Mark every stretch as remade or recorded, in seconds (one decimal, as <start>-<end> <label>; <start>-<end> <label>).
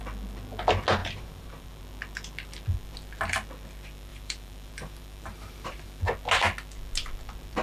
0.0-1.0 recorded; 1.0-1.8 remade; 1.8-4.1 recorded; 4.1-6.0 remade; 6.0-7.6 recorded